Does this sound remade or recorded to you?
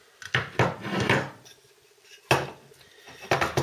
recorded